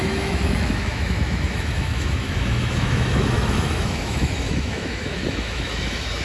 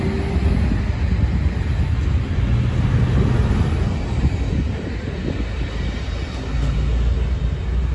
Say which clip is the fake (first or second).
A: first